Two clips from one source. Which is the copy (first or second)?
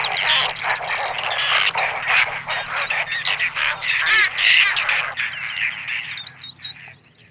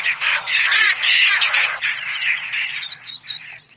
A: second